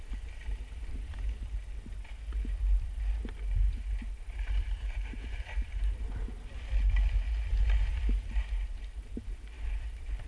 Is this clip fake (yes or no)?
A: no